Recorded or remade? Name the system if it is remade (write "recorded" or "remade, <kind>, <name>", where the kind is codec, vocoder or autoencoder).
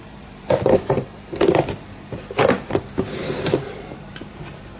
remade, vocoder, BigVGAN v2